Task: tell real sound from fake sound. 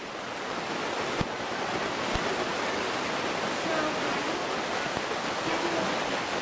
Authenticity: real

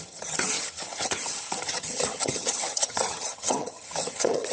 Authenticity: fake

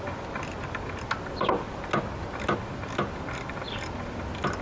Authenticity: real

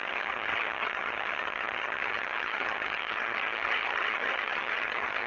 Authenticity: fake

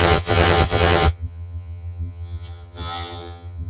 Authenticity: fake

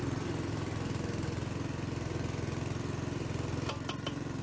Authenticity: real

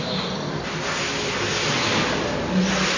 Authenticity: real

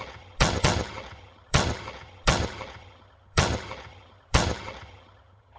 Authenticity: fake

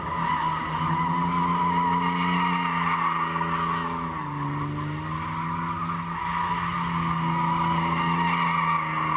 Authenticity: real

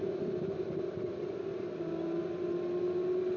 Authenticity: real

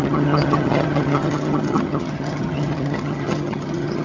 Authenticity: fake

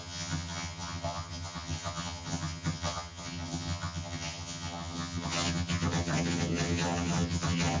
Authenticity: fake